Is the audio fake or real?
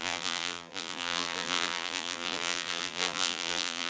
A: fake